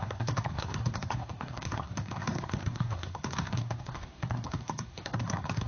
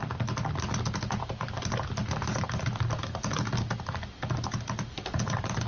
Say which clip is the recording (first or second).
second